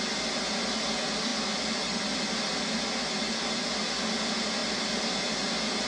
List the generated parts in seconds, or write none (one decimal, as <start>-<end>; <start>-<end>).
none